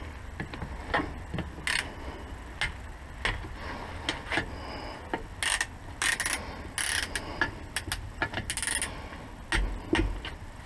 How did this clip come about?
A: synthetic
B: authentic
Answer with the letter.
B